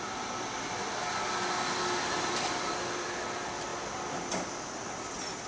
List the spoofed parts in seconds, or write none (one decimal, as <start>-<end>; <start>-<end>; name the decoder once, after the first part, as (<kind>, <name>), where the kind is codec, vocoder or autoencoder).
none